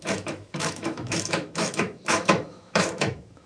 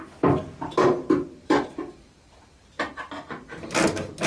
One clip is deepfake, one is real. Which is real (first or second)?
second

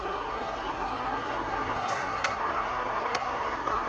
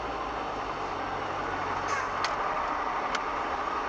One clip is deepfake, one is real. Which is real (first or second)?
second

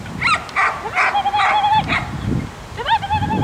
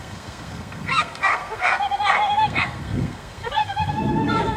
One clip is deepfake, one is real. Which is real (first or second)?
first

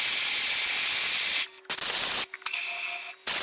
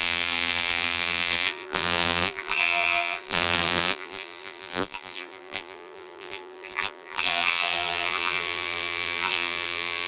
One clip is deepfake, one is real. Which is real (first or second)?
first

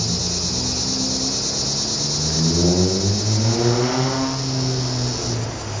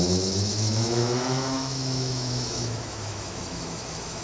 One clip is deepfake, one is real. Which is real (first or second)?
first